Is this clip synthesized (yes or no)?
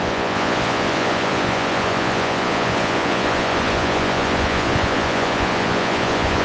yes